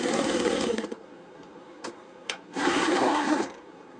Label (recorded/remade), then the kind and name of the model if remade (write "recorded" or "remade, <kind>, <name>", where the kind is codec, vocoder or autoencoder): remade, codec, SNAC